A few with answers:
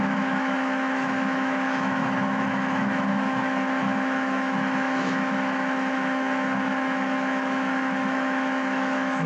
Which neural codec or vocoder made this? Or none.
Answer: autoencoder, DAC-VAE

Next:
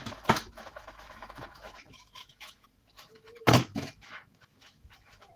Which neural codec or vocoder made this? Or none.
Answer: autoencoder, DAC-VAE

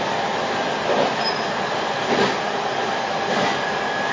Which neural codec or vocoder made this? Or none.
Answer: none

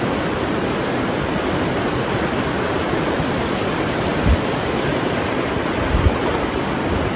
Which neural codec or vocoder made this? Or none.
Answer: none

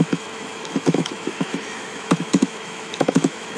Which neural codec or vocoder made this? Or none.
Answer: autoencoder, DAC-VAE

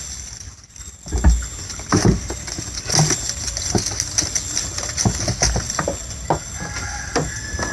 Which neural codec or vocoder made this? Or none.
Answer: none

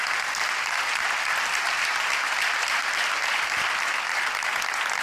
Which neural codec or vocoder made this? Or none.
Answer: none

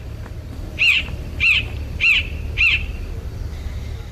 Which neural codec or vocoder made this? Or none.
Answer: none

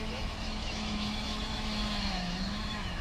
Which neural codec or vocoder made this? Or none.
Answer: autoencoder, DAC-VAE